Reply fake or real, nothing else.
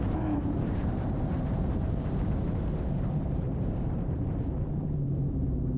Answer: fake